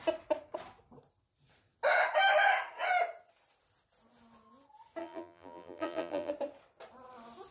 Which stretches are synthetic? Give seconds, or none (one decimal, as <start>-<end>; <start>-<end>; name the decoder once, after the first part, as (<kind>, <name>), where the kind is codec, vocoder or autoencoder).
5.0-6.3 (vocoder, BigVGAN v2)